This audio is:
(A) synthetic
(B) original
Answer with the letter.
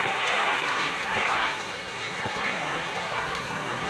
A